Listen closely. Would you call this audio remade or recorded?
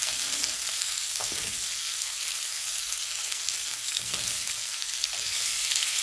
remade